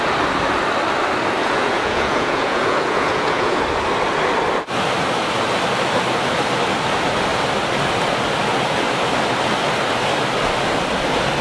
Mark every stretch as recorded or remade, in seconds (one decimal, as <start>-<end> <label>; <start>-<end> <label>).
0.0-1.4 recorded; 1.4-3.6 remade; 3.6-11.4 recorded